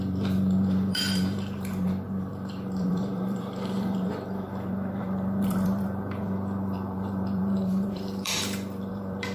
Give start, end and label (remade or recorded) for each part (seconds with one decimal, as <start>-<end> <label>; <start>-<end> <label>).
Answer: 0.0-9.3 remade